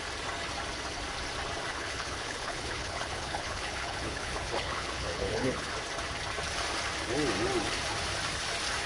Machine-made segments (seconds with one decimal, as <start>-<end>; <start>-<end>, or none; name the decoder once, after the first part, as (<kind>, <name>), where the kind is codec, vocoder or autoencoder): 1.7-5.7 (codec, HILCodec)